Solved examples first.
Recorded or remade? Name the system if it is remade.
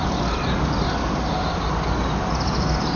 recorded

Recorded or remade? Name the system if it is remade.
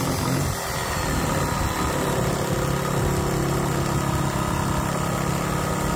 recorded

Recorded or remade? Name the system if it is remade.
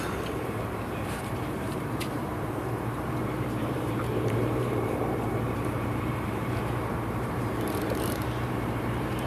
remade, vocoder, BigVGAN v2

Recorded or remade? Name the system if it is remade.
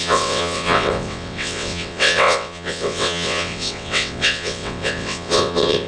remade, vocoder, WaveNeXt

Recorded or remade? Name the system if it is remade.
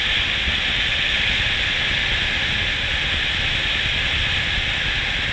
recorded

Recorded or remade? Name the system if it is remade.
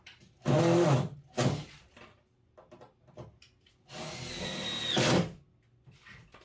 recorded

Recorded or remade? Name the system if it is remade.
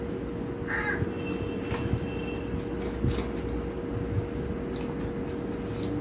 recorded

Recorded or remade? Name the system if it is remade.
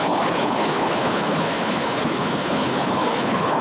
remade, codec, HILCodec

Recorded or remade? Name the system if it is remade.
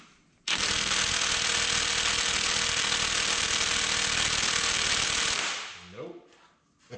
recorded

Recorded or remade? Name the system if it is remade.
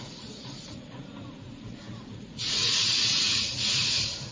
remade, vocoder, Vocos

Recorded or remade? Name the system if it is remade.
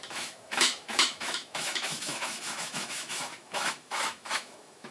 remade, autoencoder, DAC-VAE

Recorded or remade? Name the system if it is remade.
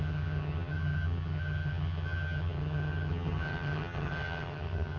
remade, vocoder, HiFi-GAN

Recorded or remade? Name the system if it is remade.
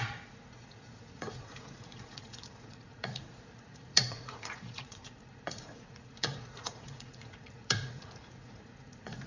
remade, vocoder, Vocos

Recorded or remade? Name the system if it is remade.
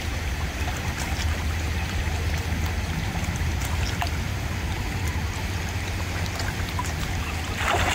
recorded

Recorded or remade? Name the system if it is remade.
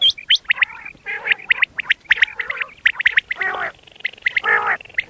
recorded